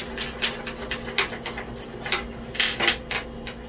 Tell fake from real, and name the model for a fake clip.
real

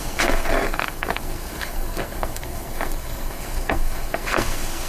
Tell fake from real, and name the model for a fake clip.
fake, codec, SNAC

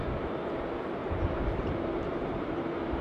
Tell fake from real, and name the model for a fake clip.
real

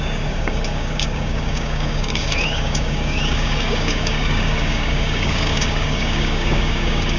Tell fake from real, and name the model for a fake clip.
fake, codec, DAC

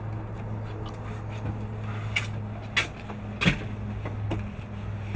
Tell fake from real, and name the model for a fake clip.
real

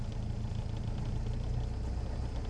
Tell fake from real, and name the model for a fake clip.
real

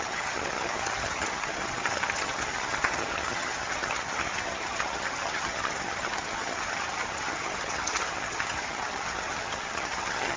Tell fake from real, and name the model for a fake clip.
fake, vocoder, HiFi-GAN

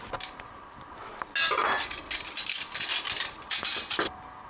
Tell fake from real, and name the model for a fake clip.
real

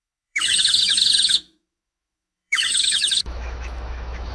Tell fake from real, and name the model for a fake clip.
fake, autoencoder, DAC-VAE